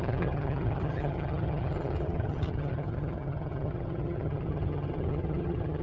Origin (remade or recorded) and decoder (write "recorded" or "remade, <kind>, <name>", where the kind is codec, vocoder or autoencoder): remade, vocoder, HiFi-GAN